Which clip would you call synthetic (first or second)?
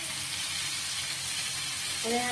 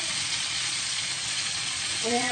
second